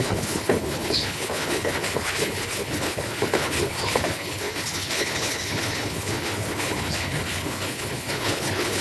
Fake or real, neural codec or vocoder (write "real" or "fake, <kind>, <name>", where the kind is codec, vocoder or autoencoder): fake, codec, HILCodec